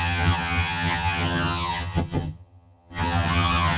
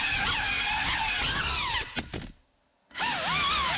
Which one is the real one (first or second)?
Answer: second